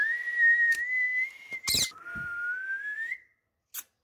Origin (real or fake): real